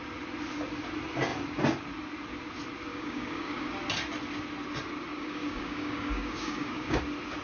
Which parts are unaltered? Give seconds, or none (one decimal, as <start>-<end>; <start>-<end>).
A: 0.0-2.9; 3.7-5.1; 7.0-7.4